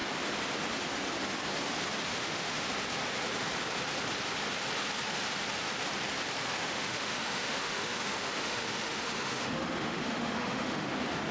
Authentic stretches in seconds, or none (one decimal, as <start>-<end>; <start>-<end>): 0.0-2.1; 2.7-6.5; 10.9-11.3